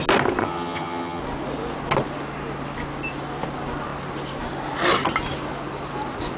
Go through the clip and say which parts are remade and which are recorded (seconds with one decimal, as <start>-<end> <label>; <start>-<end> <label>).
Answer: 0.0-0.4 recorded; 0.4-1.2 remade; 1.2-6.4 recorded